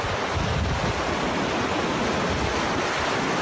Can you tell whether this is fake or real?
real